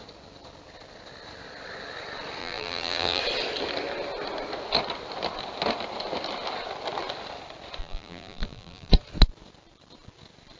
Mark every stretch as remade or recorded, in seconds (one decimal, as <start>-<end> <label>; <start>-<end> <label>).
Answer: 0.0-2.4 recorded; 2.4-3.2 remade; 3.2-7.8 recorded; 7.8-8.9 remade; 8.9-10.6 recorded